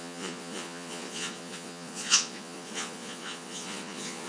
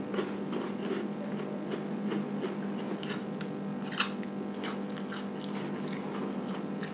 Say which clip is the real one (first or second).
second